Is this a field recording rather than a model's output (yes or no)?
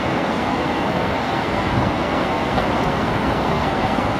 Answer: no